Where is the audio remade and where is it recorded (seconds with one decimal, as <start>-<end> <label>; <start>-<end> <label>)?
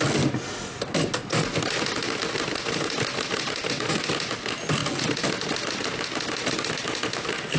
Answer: 0.0-7.6 recorded